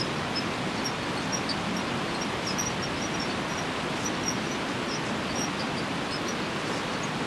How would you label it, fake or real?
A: real